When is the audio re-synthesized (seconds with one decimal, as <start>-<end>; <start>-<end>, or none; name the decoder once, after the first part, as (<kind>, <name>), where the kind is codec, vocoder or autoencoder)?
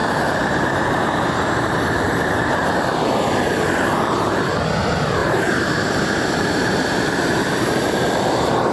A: 0.0-3.0 (vocoder, BigVGAN v2); 5.2-8.2